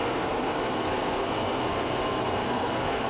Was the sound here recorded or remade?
remade